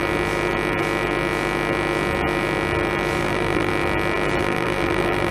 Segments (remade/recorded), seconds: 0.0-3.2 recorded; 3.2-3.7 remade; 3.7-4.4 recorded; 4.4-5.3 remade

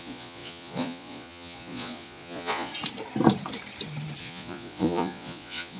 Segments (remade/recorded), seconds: 0.0-2.7 remade; 2.7-4.2 recorded; 4.2-5.8 remade

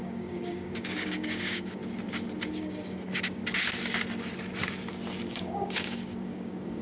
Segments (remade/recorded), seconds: 0.0-1.8 remade; 1.8-2.5 recorded; 2.5-3.4 remade; 3.4-5.3 recorded; 5.3-6.8 remade

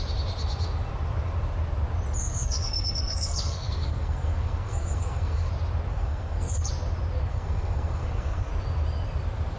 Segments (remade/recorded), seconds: 0.0-2.2 recorded; 2.2-5.5 remade; 5.5-5.9 recorded; 5.9-6.7 remade; 6.7-7.3 recorded; 7.3-8.5 remade; 8.5-9.6 recorded

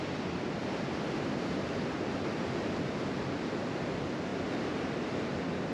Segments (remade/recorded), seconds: 0.0-5.7 recorded

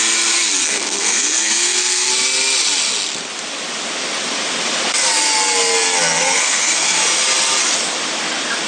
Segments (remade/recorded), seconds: 0.0-0.6 recorded; 0.6-2.1 remade; 2.1-6.2 recorded; 6.2-7.0 remade; 7.0-8.7 recorded

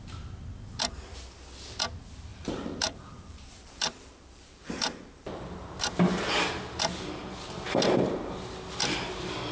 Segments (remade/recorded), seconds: 0.0-2.3 recorded; 2.3-5.9 remade; 5.9-9.5 recorded